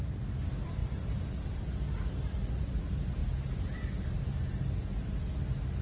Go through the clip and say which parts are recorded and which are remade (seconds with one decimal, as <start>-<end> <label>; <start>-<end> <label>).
0.0-0.8 recorded; 0.8-1.6 remade; 1.6-3.2 recorded; 3.2-5.2 remade; 5.2-5.8 recorded